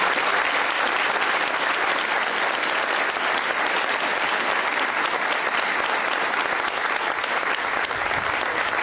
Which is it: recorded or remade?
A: recorded